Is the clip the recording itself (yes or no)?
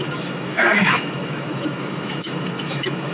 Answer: no